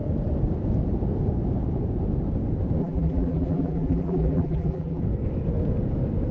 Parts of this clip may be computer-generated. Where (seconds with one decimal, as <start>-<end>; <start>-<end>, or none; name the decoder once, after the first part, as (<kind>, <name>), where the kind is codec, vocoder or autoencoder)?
2.8-5.0 (vocoder, BigVGAN v2)